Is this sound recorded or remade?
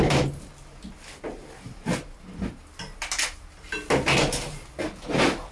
recorded